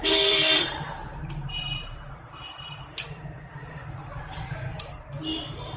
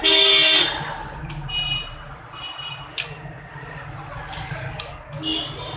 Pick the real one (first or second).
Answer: second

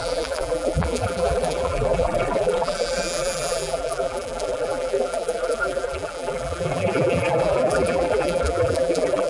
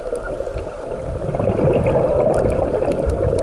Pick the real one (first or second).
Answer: second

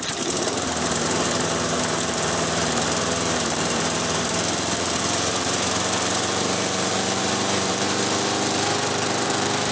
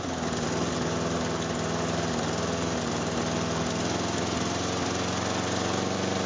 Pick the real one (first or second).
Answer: second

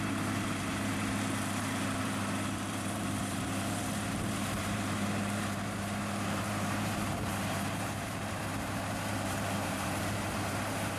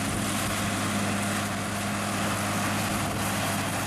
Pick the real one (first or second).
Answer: second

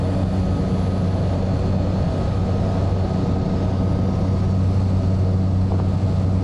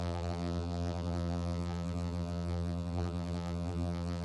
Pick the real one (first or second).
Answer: first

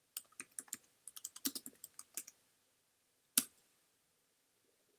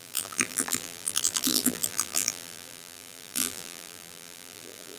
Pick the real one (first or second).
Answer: first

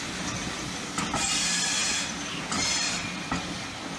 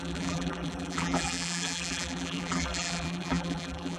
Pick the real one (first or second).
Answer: first